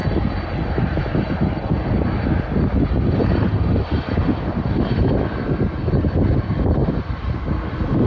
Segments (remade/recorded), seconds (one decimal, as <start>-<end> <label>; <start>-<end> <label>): 0.0-8.1 recorded